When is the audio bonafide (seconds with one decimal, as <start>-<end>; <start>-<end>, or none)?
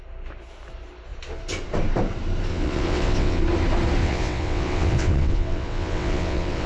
0.0-2.5; 3.4-4.0